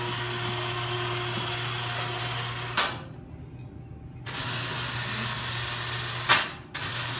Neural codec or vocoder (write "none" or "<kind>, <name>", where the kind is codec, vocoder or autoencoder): none